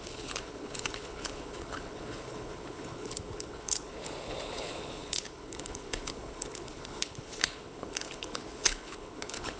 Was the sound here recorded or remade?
remade